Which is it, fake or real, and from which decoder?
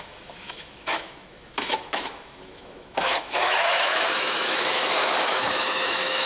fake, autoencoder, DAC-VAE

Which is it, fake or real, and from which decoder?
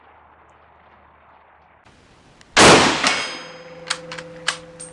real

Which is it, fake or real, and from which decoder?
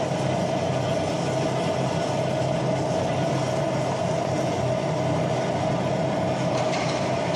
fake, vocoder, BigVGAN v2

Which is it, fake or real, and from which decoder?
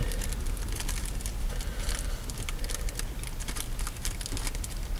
real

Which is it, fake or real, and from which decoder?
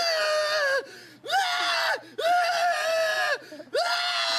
real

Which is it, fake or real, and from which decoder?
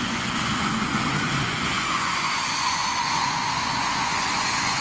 fake, vocoder, Vocos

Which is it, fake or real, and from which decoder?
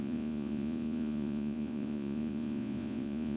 fake, vocoder, Vocos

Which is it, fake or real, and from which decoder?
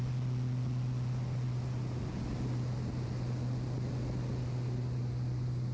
real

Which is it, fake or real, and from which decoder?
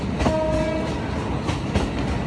real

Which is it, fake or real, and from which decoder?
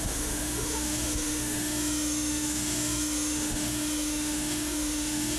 fake, autoencoder, DAC-VAE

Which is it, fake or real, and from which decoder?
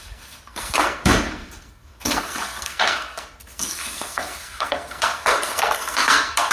fake, codec, SNAC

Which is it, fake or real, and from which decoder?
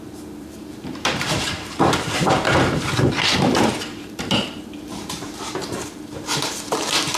fake, vocoder, BigVGAN v2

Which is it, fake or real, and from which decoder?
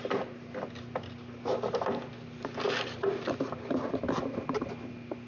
real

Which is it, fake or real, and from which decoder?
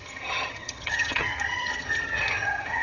fake, vocoder, HiFi-GAN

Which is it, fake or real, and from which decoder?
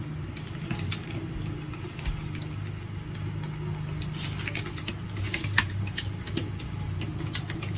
real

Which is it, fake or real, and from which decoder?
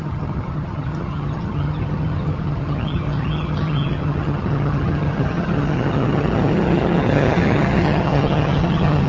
fake, vocoder, HiFi-GAN